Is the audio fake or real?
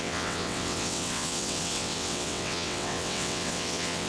fake